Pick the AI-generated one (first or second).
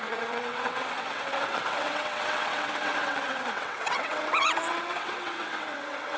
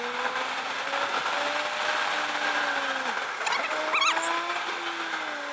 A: first